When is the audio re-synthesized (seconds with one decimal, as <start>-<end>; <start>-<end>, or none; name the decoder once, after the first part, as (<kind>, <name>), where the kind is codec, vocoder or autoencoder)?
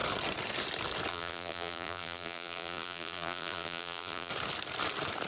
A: 1.1-4.3 (vocoder, BigVGAN v2)